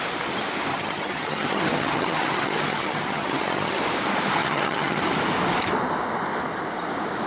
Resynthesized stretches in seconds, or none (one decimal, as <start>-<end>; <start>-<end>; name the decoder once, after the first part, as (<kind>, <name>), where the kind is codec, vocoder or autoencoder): 0.7-3.8 (vocoder, HiFi-GAN); 4.4-5.0